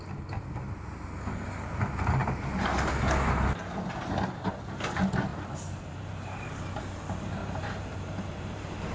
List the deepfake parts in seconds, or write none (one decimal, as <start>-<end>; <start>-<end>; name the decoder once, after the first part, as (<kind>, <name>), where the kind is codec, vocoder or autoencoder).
2.2-2.9 (vocoder, BigVGAN v2); 5.3-6.4; 7.4-8.9